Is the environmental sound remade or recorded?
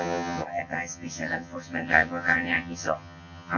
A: remade